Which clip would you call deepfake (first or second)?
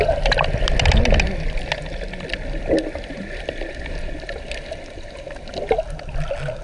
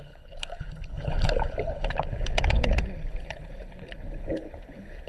second